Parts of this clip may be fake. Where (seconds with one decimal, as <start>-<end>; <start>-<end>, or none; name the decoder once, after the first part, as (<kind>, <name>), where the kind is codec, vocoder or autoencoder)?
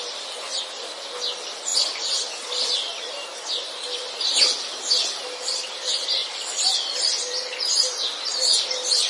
1.7-2.3 (vocoder, BigVGAN v2); 3.3-4.2; 6.2-7.4; 8.3-9.1